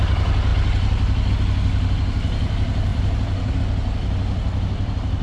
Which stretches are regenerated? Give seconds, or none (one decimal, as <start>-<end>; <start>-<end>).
2.9-3.6